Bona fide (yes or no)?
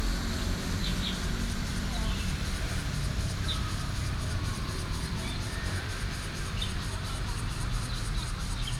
no